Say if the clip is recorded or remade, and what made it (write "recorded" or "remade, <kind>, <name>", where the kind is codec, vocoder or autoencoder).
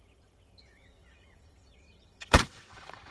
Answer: remade, vocoder, WaveNeXt